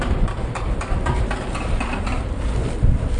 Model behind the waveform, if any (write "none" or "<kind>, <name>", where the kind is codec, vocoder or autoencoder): vocoder, BigVGAN v2